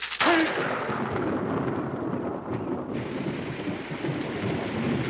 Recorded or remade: recorded